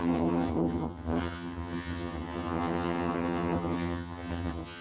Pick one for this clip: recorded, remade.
remade